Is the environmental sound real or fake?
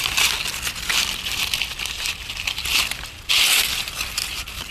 real